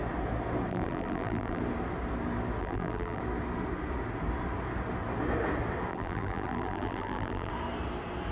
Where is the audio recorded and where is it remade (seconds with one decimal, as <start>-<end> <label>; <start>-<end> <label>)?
0.0-0.7 recorded; 0.7-1.6 remade; 1.6-2.6 recorded; 2.6-3.2 remade; 3.2-5.9 recorded; 5.9-7.5 remade; 7.5-8.3 recorded